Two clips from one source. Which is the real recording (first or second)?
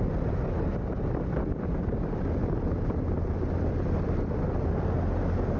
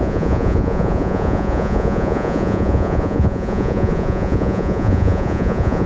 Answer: first